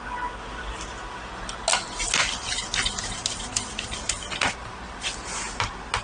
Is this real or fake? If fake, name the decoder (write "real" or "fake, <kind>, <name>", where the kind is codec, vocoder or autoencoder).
real